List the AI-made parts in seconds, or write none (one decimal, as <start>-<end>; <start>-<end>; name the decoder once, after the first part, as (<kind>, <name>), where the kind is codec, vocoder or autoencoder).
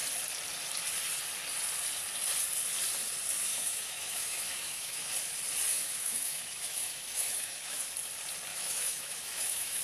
3.5-5.1 (autoencoder, DAC-VAE); 5.7-7.9; 8.5-9.8